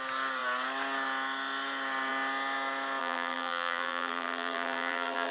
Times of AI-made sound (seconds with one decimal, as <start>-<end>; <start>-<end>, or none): 3.0-5.3